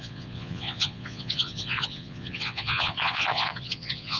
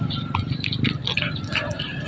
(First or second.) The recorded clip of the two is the second